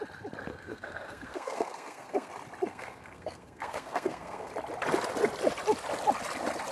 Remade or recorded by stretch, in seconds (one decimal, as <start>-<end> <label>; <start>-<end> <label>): 0.0-0.5 recorded; 0.5-2.3 remade; 2.3-2.7 recorded; 2.7-4.5 remade; 4.5-6.7 recorded